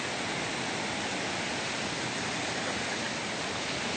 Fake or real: real